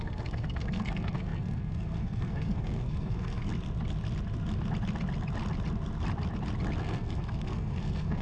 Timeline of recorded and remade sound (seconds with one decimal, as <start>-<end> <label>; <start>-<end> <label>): 0.0-3.5 remade; 3.5-6.8 recorded; 6.8-8.2 remade